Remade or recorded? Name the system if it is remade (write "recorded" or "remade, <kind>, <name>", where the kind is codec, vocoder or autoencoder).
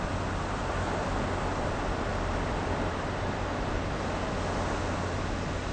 recorded